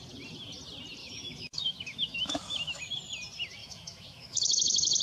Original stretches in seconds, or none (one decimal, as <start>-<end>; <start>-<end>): 0.0-1.0; 2.8-3.6